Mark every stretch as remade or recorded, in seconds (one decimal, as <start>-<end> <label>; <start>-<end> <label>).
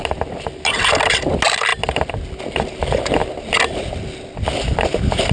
0.0-5.3 recorded